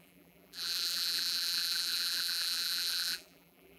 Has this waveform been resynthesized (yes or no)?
yes